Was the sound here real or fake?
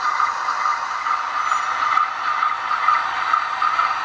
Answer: real